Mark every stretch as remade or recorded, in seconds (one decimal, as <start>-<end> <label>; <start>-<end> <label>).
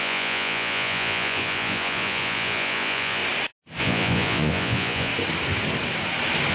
0.0-3.2 remade; 3.2-3.8 recorded; 3.8-5.1 remade; 5.1-6.5 recorded